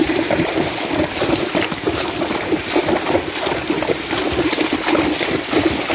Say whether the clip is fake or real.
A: real